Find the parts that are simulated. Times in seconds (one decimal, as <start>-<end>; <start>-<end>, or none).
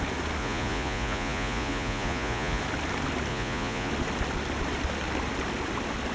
0.4-2.6; 3.3-3.9